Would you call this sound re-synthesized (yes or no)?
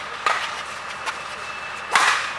no